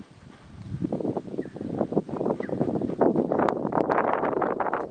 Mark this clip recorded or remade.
remade